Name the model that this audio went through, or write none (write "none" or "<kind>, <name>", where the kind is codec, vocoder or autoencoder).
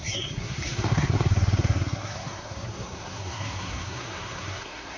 codec, SNAC